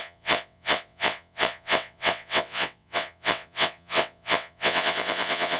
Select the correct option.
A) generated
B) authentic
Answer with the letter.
A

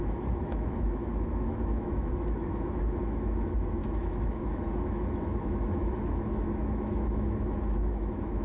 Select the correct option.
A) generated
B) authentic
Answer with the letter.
A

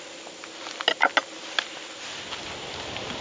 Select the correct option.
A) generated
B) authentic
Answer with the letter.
B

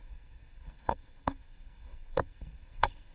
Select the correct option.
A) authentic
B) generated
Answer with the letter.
B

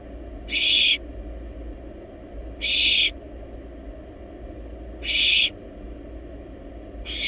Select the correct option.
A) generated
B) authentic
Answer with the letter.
B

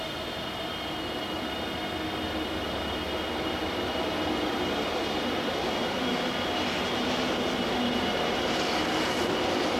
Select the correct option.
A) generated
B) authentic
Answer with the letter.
B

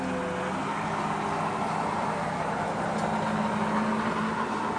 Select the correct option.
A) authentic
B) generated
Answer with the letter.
A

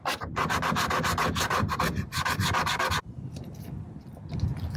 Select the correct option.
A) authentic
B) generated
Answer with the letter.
A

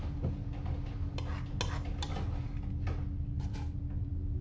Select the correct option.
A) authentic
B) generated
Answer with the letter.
A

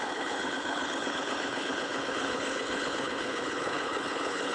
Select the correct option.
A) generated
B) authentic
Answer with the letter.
A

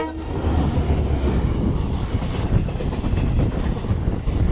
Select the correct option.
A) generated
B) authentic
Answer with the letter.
B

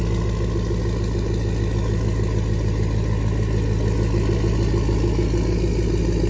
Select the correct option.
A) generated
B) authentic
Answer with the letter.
B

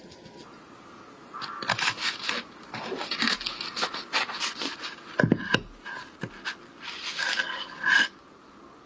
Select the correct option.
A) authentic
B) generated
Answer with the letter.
A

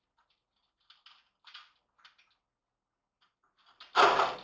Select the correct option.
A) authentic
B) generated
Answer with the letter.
A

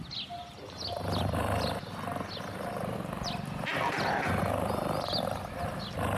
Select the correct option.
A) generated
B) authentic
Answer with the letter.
B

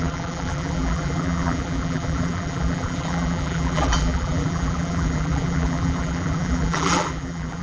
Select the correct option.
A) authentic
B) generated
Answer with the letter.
B